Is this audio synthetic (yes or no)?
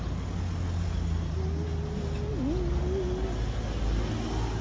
no